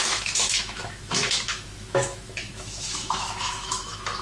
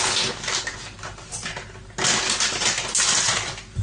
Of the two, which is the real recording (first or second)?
second